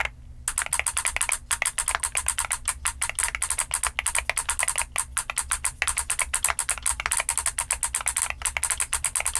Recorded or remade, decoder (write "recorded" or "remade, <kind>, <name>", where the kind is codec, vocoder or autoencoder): recorded